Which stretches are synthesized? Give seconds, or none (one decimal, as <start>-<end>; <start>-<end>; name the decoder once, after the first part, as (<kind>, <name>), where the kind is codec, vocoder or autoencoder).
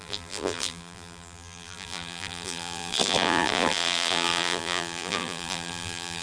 0.0-6.2 (vocoder, BigVGAN v2)